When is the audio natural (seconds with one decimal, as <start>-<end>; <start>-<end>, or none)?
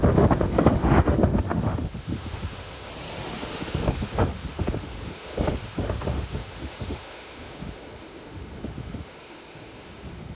2.9-3.4